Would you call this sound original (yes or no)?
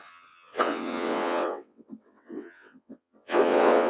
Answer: no